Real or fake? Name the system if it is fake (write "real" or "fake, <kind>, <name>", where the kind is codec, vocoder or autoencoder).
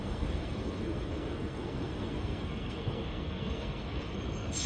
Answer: fake, codec, SNAC